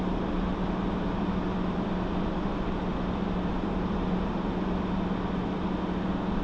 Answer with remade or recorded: recorded